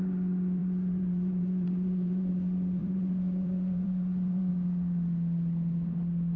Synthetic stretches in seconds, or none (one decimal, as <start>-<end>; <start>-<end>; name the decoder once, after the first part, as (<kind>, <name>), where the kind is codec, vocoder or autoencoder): 0.6-2.3 (vocoder, BigVGAN v2); 2.8-4.5